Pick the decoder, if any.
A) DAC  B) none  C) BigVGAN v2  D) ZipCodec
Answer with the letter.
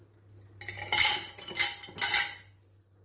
B